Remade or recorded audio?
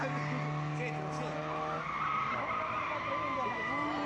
recorded